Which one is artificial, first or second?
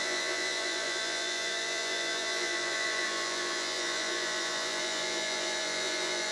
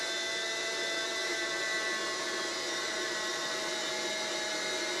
first